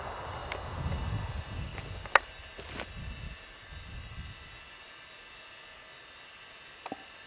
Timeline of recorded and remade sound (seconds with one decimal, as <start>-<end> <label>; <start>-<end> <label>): 0.0-7.3 recorded